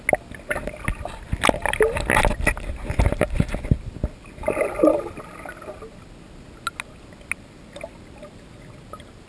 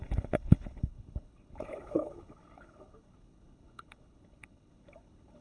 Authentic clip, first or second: first